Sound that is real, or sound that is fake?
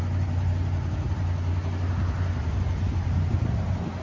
real